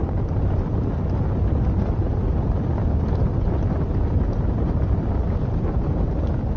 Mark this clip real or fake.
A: real